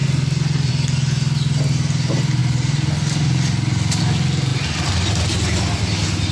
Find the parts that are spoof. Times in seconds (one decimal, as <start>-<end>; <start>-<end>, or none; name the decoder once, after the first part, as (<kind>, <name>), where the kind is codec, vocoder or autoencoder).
none